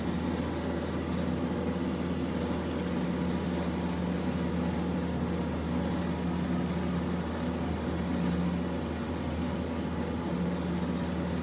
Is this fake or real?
real